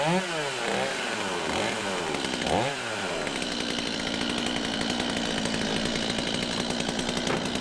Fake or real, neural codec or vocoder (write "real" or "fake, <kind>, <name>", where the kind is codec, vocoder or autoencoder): real